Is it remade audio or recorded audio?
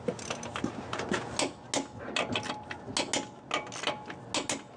recorded